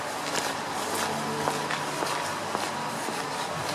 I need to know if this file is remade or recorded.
recorded